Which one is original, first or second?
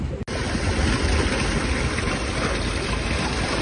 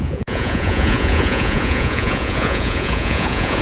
first